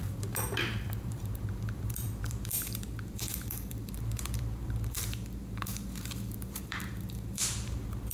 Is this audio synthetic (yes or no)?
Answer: yes